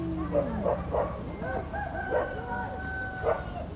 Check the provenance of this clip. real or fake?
real